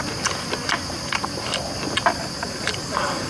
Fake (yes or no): no